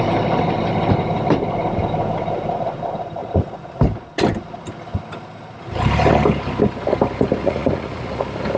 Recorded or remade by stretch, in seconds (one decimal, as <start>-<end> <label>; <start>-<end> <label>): 0.0-3.2 recorded; 3.2-3.8 remade; 3.8-7.4 recorded; 7.4-8.2 remade; 8.2-8.6 recorded